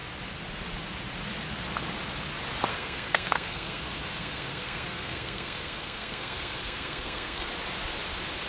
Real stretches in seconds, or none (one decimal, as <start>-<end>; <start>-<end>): 0.0-2.7; 7.5-8.5